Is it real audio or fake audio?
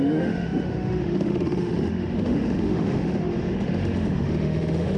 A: fake